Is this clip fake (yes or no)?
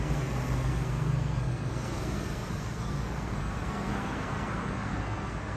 yes